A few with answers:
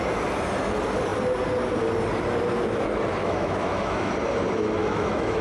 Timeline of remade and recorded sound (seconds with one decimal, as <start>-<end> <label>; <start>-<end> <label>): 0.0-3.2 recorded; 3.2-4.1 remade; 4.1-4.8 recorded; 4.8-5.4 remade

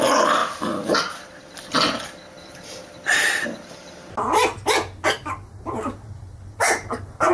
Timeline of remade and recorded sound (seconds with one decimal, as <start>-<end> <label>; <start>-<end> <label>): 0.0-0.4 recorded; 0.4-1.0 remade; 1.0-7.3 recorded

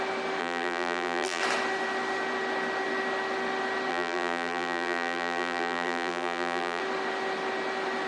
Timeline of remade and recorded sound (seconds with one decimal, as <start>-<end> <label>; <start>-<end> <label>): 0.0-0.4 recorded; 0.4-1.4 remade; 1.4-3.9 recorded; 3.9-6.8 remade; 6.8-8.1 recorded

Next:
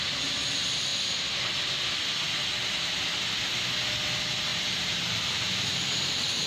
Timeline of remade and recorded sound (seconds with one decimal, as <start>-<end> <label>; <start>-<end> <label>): 0.0-4.5 recorded; 4.5-6.5 remade